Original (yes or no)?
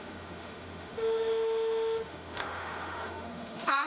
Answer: no